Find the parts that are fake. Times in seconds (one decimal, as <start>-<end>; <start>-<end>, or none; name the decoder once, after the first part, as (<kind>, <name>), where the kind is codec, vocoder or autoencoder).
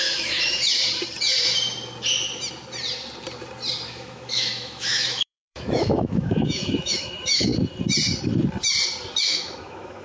0.0-0.8 (autoencoder, DAC-VAE); 3.9-7.5; 9.2-10.0